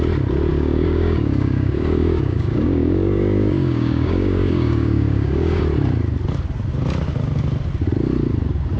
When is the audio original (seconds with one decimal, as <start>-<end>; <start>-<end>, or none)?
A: 0.0-0.5; 5.6-8.8